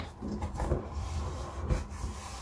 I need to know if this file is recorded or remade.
remade